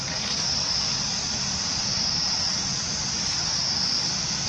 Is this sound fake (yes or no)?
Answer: no